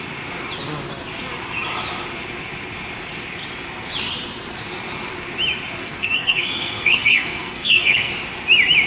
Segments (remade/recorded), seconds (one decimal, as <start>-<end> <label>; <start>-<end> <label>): 0.0-5.8 recorded; 5.8-8.1 remade; 8.1-8.9 recorded